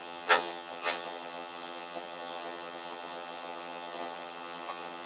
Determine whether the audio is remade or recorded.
remade